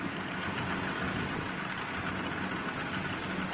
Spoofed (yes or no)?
no